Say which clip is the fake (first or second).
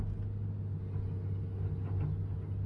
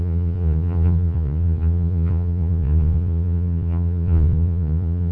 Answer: second